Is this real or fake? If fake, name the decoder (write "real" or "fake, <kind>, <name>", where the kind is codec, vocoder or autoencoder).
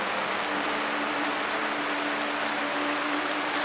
real